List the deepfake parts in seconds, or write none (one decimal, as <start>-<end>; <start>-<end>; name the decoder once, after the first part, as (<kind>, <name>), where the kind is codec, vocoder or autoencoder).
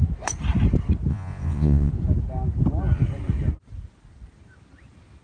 1.1-1.9 (vocoder, Vocos)